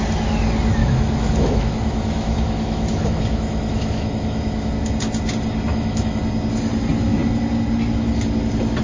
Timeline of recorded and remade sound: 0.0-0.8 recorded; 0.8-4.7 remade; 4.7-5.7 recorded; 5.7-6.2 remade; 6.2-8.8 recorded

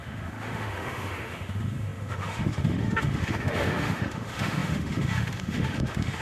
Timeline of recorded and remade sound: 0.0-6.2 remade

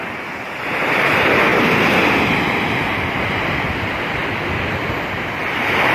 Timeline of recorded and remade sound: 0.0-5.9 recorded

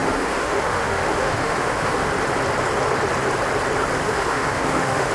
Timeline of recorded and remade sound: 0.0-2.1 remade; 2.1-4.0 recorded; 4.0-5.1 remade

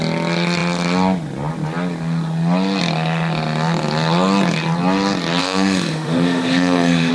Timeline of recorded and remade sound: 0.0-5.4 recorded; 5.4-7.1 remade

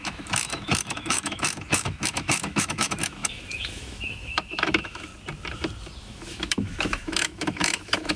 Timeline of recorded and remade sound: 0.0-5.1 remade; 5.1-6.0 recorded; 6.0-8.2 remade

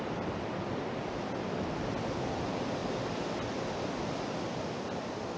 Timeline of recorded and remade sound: 0.0-5.4 recorded

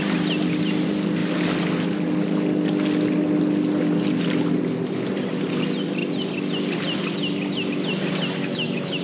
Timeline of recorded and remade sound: 0.0-8.4 recorded; 8.4-9.0 remade